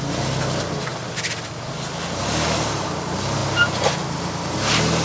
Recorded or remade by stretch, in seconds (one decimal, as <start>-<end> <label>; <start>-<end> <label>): 0.0-5.0 recorded